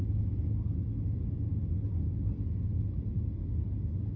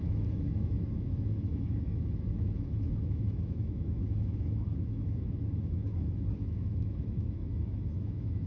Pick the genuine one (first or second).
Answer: first